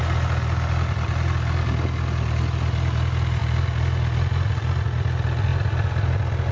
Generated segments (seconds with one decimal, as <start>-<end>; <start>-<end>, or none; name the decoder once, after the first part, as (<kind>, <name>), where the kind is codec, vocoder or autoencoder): none